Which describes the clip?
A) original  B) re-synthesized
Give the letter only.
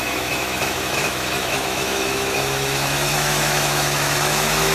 B